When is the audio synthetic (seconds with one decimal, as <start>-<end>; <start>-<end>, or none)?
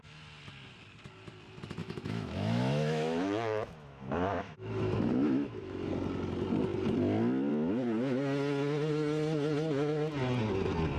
1.8-5.9